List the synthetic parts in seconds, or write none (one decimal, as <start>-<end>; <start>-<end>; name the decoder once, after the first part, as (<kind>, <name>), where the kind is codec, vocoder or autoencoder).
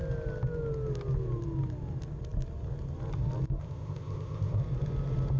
3.6-4.6 (codec, ZipCodec)